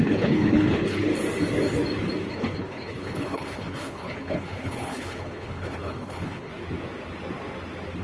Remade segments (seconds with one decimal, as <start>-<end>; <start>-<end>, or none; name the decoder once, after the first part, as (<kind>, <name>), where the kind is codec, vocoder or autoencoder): 0.0-1.1 (codec, HILCodec); 2.3-6.5